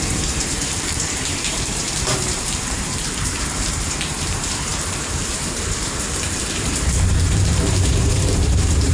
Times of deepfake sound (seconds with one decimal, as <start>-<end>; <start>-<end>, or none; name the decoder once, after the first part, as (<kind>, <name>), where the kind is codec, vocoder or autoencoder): 0.0-8.9 (vocoder, BigVGAN v2)